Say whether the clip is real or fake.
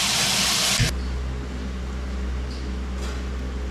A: real